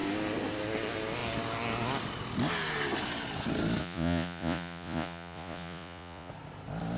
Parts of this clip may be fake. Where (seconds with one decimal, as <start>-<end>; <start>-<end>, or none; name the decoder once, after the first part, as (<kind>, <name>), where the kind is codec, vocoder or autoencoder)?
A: 3.8-6.3 (vocoder, Vocos)